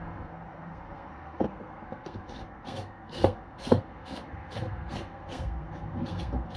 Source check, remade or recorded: remade